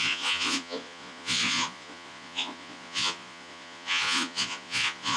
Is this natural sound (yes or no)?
no